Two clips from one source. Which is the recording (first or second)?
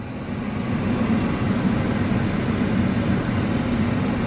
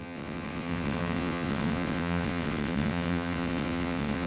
first